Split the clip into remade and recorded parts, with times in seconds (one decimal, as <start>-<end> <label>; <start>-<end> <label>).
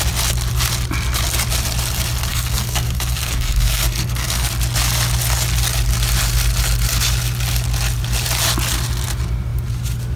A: 0.0-2.3 recorded; 2.3-4.5 remade; 4.5-10.2 recorded